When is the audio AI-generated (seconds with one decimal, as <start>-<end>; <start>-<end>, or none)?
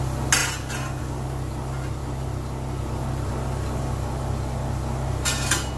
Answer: none